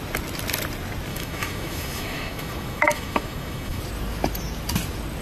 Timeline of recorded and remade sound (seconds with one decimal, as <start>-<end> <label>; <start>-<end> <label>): 0.0-1.1 recorded; 1.1-3.8 remade; 3.8-5.2 recorded